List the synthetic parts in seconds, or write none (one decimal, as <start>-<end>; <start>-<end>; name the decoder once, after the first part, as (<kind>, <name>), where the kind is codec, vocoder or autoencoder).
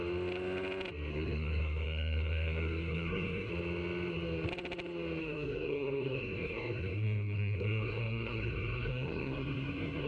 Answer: 1.1-3.5 (codec, SNAC); 5.2-10.1